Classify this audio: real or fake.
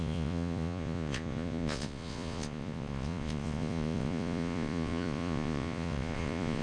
fake